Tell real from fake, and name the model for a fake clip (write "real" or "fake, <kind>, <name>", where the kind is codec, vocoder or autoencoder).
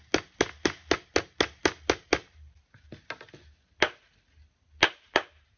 real